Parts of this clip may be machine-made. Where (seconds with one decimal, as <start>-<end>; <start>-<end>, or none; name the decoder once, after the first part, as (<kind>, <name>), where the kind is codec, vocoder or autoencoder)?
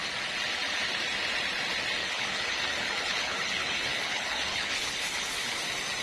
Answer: 2.0-5.6 (codec, HILCodec)